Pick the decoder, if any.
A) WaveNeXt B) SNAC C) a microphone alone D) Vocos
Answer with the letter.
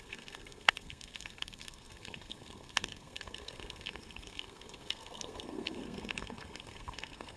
B